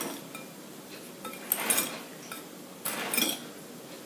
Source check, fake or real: real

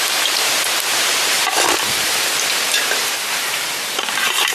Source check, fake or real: fake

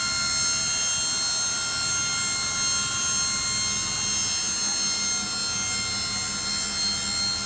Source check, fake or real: real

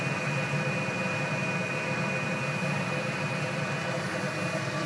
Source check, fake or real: real